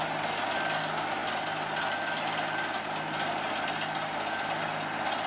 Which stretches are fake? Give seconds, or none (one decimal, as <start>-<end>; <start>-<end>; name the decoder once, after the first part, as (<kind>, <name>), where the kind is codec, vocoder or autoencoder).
none